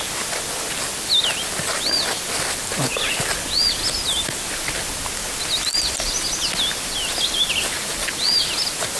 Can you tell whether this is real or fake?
real